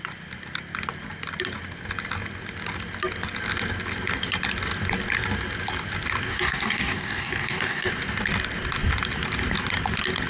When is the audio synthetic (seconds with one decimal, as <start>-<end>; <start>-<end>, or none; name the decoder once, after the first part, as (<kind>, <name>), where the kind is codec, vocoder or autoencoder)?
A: 6.3-7.9 (codec, DAC)